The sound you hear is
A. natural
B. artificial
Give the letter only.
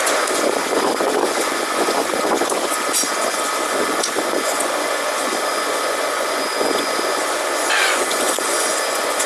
B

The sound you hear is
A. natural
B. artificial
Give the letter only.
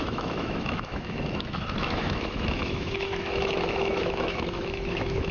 B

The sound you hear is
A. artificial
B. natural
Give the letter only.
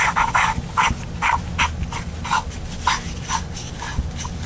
B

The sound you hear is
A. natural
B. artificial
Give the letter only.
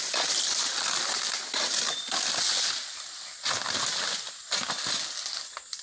A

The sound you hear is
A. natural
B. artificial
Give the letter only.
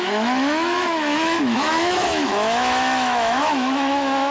B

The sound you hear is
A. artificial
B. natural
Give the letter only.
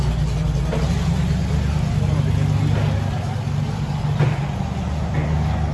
B